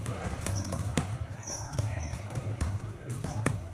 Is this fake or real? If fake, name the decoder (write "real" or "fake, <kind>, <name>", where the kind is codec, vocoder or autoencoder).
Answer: fake, codec, SNAC